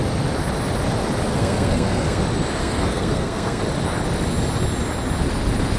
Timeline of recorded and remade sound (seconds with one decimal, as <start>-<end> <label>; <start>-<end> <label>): 0.0-1.3 recorded; 1.3-2.2 remade; 2.2-2.6 recorded; 2.6-3.6 remade; 3.6-5.8 recorded